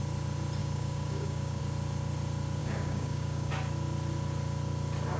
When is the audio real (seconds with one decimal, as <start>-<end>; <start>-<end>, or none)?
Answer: 0.0-0.6; 1.6-2.6; 3.5-5.2